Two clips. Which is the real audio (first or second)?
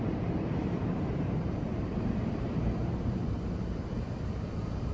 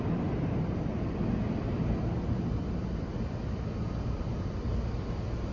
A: second